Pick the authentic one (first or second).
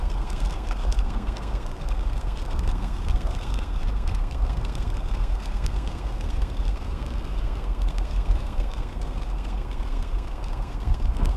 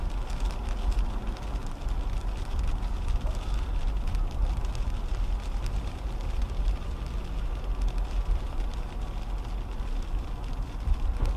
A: second